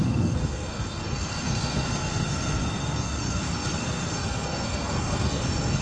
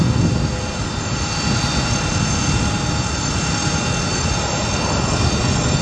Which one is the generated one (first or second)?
first